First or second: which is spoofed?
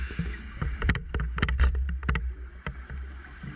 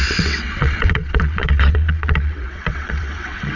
second